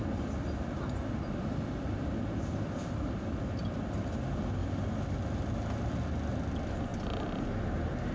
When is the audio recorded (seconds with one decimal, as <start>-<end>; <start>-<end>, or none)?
0.0-8.1